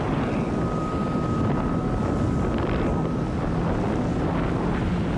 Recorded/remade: recorded